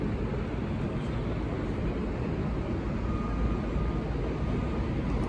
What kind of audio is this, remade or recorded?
recorded